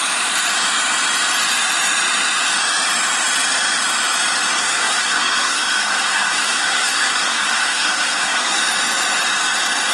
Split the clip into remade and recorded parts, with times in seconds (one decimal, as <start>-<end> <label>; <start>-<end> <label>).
0.0-4.6 recorded; 4.6-8.6 remade; 8.6-9.9 recorded